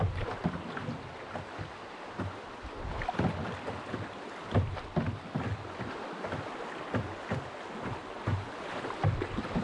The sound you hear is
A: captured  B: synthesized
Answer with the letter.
A